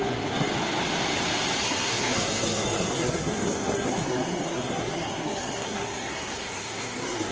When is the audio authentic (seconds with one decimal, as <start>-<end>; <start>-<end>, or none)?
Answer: 0.5-1.6